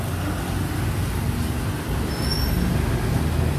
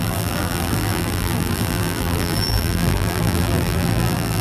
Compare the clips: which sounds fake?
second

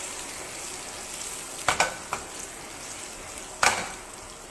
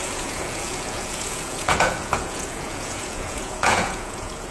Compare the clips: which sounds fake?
second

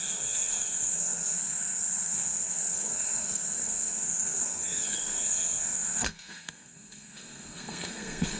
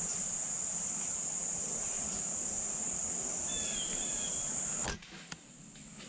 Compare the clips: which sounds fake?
first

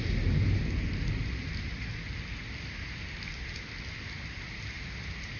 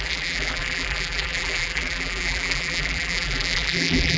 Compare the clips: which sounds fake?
second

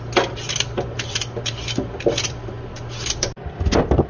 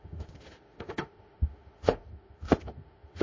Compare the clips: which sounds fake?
second